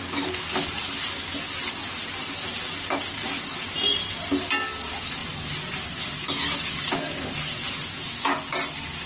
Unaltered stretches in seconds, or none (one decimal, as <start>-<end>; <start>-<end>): 0.0-9.1